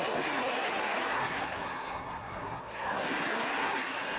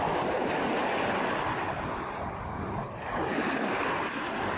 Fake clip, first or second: first